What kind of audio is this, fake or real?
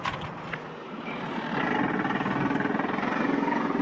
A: real